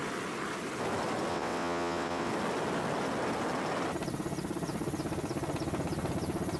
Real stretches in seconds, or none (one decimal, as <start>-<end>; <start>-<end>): 0.0-1.3; 2.3-6.6

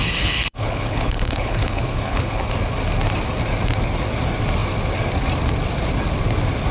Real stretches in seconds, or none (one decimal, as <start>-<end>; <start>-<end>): 2.4-6.7

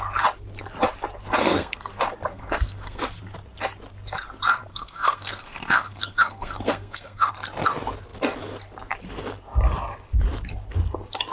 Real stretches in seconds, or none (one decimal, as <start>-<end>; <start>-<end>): 0.0-1.4; 1.9-2.3; 3.2-4.7; 7.3-11.3

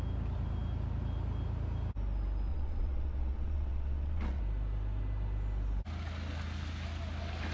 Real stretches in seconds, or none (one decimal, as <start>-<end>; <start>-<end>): 0.0-2.5; 4.4-7.5